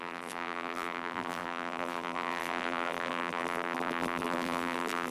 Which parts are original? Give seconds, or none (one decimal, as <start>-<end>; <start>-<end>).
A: none